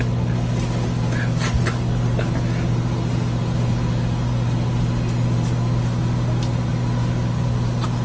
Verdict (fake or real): real